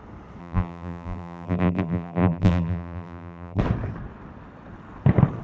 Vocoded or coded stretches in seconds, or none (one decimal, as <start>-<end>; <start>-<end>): 0.4-3.6